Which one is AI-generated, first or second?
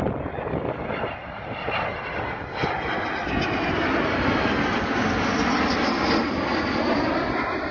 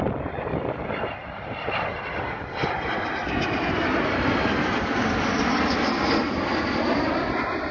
second